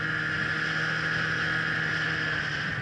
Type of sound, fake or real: real